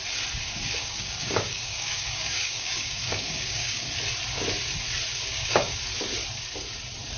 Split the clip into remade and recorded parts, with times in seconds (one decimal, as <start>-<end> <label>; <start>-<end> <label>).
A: 0.0-0.8 recorded; 0.8-3.9 remade; 3.9-5.1 recorded; 5.1-5.8 remade; 5.8-7.2 recorded

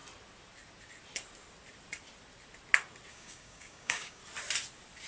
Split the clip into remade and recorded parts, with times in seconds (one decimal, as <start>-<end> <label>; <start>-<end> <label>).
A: 0.0-3.1 recorded; 3.1-4.2 remade; 4.2-5.1 recorded

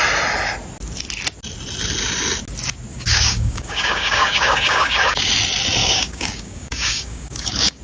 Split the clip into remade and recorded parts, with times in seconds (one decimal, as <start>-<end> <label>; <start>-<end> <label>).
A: 0.0-2.9 recorded; 2.9-5.3 remade; 5.3-5.8 recorded; 5.8-7.8 remade

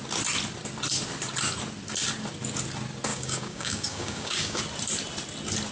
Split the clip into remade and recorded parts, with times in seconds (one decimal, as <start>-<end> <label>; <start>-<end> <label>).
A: 0.0-3.1 recorded; 3.1-4.6 remade; 4.6-5.7 recorded

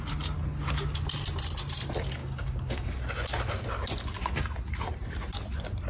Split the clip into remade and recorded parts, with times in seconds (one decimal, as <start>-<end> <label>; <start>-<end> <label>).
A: 0.0-2.2 recorded; 2.2-3.0 remade; 3.0-5.9 recorded